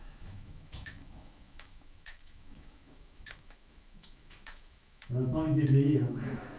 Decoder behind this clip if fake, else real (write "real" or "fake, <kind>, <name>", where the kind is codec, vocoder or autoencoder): fake, autoencoder, DAC-VAE